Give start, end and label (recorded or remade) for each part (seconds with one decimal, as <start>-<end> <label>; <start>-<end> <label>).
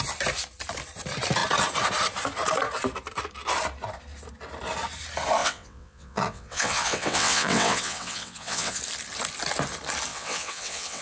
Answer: 0.0-5.4 recorded; 5.4-8.8 remade; 8.8-10.1 recorded; 10.1-11.0 remade